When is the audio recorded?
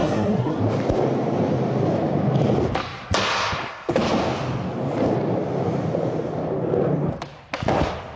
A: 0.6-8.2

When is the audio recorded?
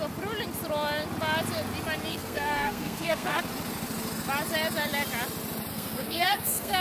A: 0.0-2.1; 3.4-5.7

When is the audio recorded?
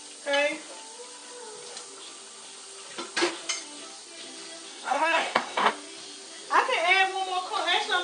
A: 0.0-4.7; 5.7-8.0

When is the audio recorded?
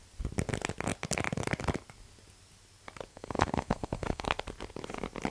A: 0.0-3.1; 4.3-5.3